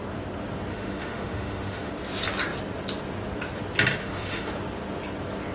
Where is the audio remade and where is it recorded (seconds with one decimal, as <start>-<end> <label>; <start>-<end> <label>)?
0.0-0.7 recorded; 0.7-1.9 remade; 1.9-4.0 recorded; 4.0-4.5 remade; 4.5-5.5 recorded